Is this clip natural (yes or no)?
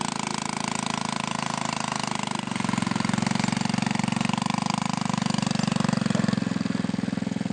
yes